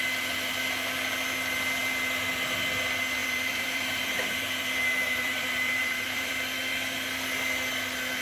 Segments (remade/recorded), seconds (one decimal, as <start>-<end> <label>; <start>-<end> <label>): 0.0-3.2 recorded; 3.2-6.3 remade; 6.3-8.2 recorded